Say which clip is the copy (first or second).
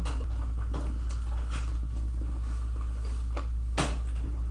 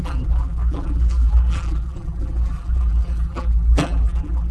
second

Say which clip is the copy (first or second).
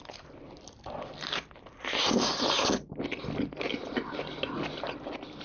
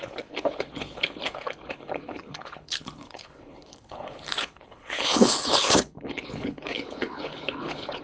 second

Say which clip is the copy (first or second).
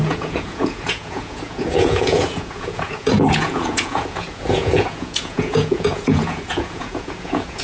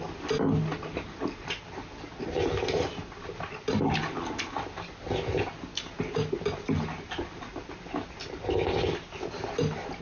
first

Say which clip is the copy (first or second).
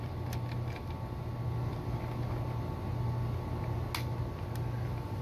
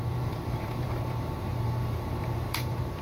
second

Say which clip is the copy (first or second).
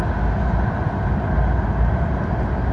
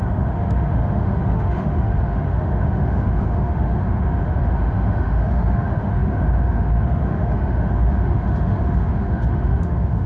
second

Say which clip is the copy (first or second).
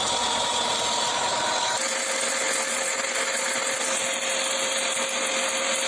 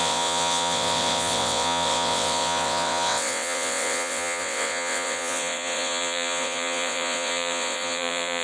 second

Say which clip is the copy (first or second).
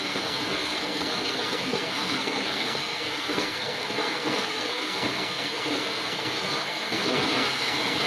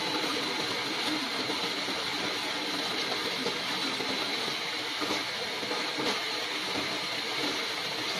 first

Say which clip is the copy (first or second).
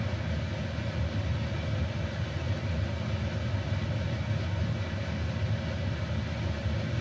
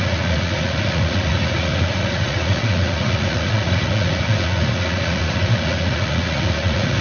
second